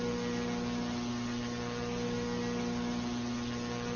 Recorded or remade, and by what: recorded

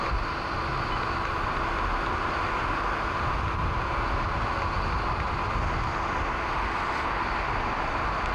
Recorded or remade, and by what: recorded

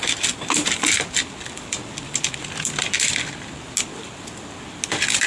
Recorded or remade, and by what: recorded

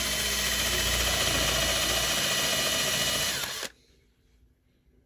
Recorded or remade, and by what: recorded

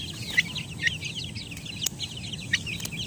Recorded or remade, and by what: recorded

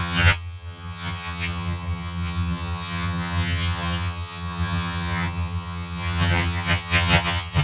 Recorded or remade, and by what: remade, vocoder, HiFi-GAN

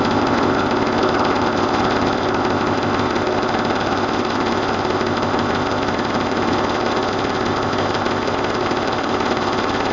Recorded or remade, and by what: remade, codec, ZipCodec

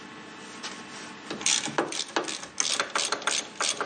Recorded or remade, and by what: recorded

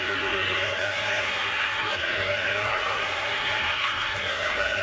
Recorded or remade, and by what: remade, codec, SNAC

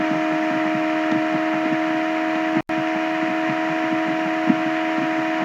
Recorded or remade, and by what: recorded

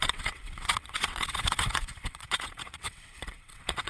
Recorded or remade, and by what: remade, vocoder, WaveNeXt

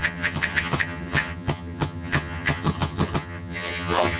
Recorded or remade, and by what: remade, vocoder, HiFi-GAN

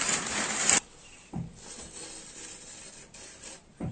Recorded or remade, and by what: recorded